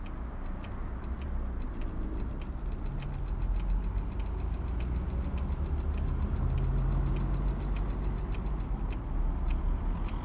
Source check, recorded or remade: recorded